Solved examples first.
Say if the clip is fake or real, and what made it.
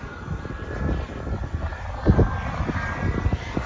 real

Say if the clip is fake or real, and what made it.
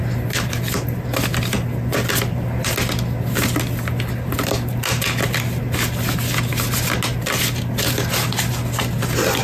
real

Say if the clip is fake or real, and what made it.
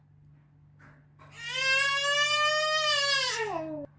real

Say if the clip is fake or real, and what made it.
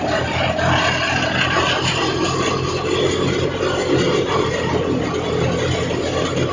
real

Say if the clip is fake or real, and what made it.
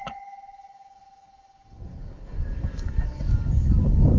fake, codec, DAC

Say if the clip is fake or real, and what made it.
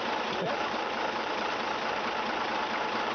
fake, vocoder, BigVGAN v2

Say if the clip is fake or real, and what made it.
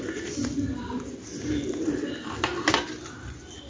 real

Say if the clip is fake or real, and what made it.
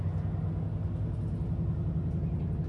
real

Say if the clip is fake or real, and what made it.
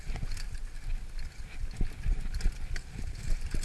real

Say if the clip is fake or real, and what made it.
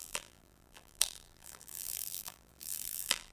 fake, vocoder, BigVGAN v2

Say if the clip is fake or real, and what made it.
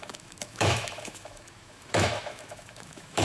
fake, autoencoder, DAC-VAE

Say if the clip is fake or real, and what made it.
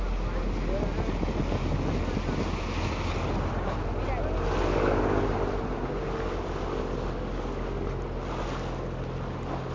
real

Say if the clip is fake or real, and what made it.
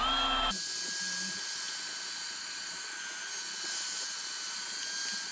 real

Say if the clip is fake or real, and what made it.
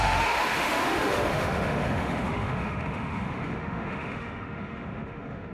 fake, autoencoder, DAC-VAE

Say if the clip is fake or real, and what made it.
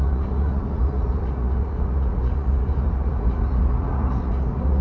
fake, vocoder, Vocos